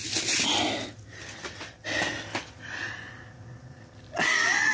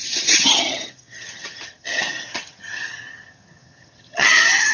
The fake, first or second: second